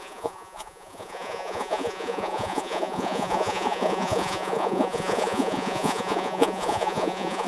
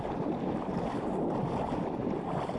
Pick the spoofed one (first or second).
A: first